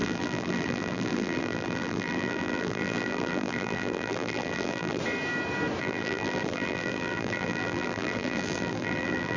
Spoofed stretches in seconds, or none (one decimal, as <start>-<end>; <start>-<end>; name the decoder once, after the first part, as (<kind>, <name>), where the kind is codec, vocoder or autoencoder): 0.0-5.0 (vocoder, BigVGAN v2); 5.8-9.4